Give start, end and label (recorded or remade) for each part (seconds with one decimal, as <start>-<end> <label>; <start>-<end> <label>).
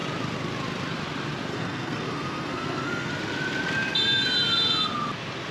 0.0-1.5 recorded; 1.5-3.1 remade; 3.1-5.5 recorded